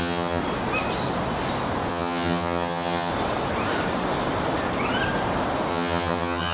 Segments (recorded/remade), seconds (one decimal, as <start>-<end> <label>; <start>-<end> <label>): 0.0-0.4 remade; 0.4-1.9 recorded; 1.9-3.1 remade; 3.1-5.7 recorded; 5.7-6.5 remade